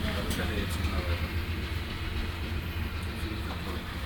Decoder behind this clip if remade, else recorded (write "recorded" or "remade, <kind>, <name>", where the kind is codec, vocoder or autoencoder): recorded